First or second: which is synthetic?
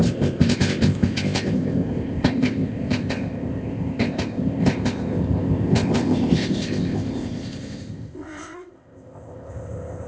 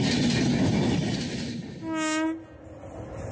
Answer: first